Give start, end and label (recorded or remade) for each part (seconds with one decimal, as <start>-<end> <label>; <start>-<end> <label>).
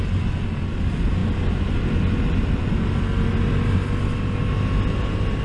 0.0-5.4 recorded